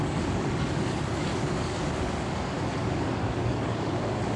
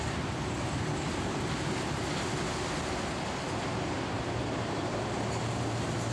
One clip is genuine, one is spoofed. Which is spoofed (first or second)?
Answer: first